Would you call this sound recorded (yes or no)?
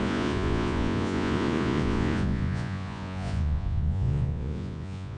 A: no